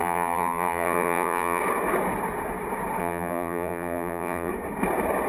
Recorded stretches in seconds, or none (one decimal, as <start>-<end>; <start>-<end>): 1.6-3.0; 4.5-5.3